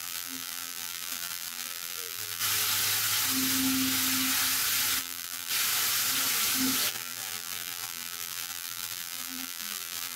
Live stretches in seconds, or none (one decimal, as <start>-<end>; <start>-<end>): 2.4-5.0; 5.5-6.9